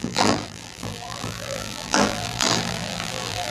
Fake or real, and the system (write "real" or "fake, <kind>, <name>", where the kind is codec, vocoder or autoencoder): fake, vocoder, BigVGAN v2